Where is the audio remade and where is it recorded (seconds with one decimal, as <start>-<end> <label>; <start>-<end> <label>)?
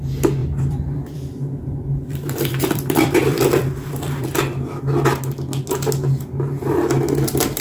0.0-0.4 recorded; 0.4-4.4 remade; 4.4-7.6 recorded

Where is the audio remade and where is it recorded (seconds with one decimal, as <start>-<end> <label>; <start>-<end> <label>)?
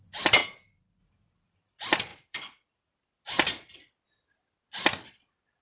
0.0-0.4 recorded; 0.4-1.0 remade; 1.0-2.1 recorded; 2.1-3.2 remade; 3.2-5.6 recorded